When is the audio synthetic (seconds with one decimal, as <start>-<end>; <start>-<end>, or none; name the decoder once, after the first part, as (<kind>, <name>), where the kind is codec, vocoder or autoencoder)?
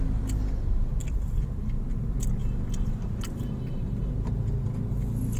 1.0-1.6 (vocoder, BigVGAN v2)